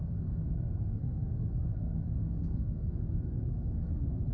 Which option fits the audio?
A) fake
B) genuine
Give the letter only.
A